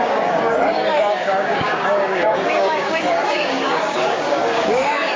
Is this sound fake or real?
fake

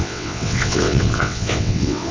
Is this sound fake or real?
fake